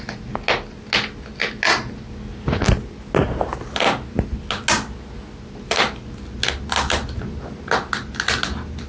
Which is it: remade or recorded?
recorded